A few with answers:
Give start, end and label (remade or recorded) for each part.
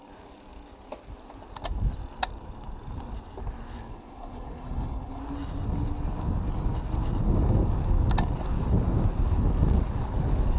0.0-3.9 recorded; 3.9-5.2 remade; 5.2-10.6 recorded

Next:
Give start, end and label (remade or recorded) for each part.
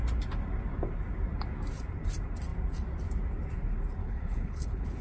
0.0-4.0 recorded; 4.0-5.0 remade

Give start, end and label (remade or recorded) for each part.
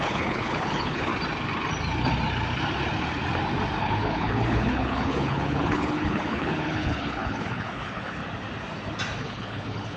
0.0-1.1 remade; 1.1-3.8 recorded; 3.8-8.2 remade; 8.2-9.2 recorded; 9.2-10.0 remade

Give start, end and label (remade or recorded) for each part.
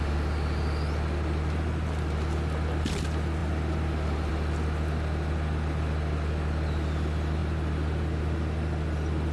0.0-9.3 recorded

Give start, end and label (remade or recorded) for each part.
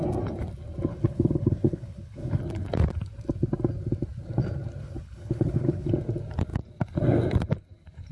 0.0-0.9 recorded; 0.9-2.4 remade; 2.4-4.8 recorded; 4.8-5.9 remade; 5.9-8.1 recorded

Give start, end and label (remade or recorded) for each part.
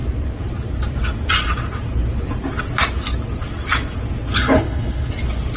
0.0-4.3 recorded; 4.3-5.1 remade; 5.1-5.6 recorded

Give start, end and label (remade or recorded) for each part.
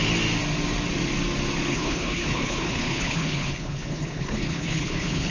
0.0-1.7 recorded; 1.7-5.3 remade